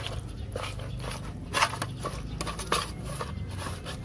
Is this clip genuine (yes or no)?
yes